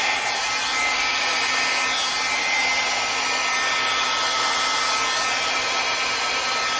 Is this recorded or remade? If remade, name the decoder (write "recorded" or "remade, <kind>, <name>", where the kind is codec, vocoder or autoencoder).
recorded